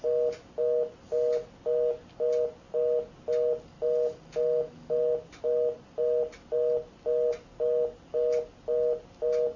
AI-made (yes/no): no